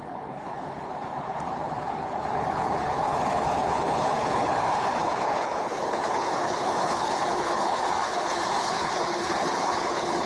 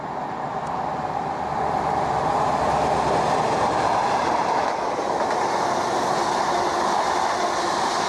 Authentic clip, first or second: second